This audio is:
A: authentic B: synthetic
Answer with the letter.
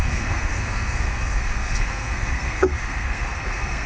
B